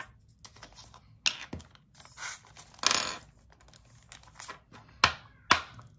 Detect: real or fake real